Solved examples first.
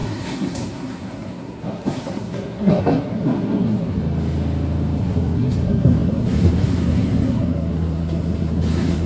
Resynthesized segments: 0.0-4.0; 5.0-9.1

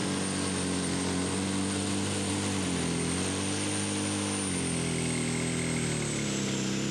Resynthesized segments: none

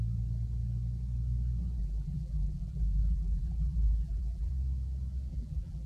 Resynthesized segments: 1.8-4.5; 5.3-5.9

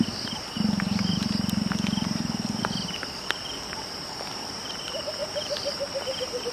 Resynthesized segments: none

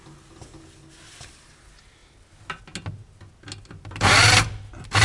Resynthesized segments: none

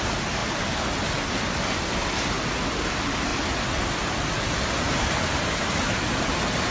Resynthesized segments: none

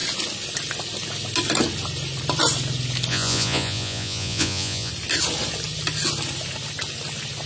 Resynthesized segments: 3.1-4.9